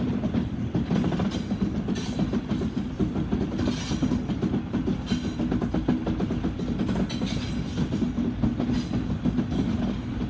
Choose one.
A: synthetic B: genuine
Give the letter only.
B